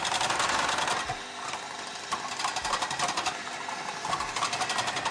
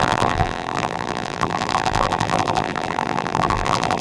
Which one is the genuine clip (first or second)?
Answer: first